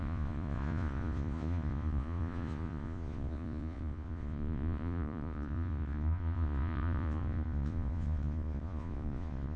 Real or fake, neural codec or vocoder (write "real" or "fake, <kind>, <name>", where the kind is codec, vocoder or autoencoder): fake, vocoder, Vocos